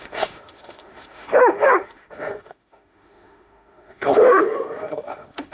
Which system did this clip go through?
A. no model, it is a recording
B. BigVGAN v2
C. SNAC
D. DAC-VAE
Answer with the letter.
D